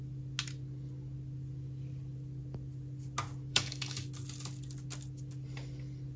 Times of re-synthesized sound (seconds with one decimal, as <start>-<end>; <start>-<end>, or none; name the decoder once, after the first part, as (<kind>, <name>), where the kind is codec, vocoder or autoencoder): 3.5-4.0 (codec, DAC)